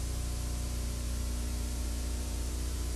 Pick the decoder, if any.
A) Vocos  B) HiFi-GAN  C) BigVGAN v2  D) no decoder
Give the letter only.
C